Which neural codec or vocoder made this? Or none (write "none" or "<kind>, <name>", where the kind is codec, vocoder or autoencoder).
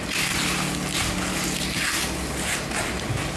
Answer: none